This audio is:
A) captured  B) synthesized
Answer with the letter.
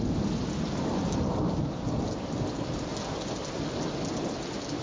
A